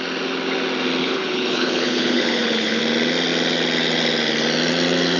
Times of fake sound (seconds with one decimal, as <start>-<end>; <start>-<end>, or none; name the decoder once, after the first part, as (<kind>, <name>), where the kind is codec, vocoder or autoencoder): 1.0-2.8 (codec, HILCodec)